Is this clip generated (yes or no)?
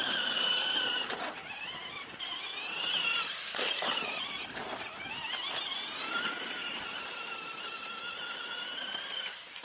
yes